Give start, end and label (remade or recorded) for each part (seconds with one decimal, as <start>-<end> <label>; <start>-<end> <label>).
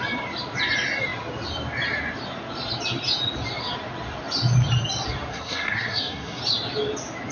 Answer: 0.0-5.3 recorded; 5.3-6.4 remade; 6.4-7.3 recorded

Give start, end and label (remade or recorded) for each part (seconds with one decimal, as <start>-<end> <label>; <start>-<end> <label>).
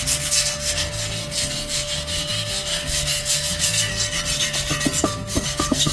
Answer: 0.0-3.9 remade; 3.9-5.0 recorded; 5.0-5.9 remade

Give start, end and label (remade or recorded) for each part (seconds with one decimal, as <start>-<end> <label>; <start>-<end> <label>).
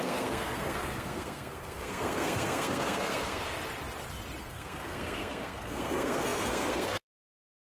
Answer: 0.0-3.6 remade; 3.6-4.4 recorded; 4.4-7.8 remade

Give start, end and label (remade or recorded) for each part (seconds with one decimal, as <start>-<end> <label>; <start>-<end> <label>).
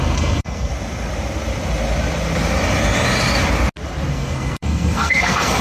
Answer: 0.0-0.7 remade; 0.7-4.1 recorded; 4.1-5.6 remade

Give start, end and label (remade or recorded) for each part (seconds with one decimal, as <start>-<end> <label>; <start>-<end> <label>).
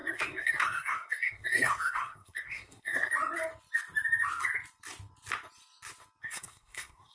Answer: 0.0-3.1 remade; 3.1-6.2 recorded; 6.2-7.1 remade